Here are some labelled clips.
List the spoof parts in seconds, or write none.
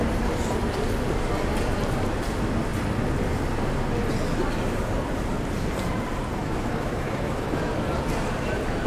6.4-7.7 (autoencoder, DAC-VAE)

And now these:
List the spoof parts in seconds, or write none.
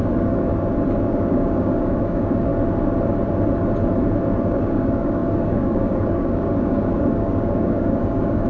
0.0-0.5 (codec, DAC); 1.1-2.5; 4.5-8.5